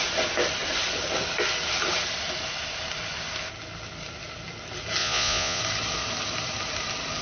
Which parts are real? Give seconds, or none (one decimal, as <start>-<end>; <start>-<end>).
0.0-5.0; 5.6-7.2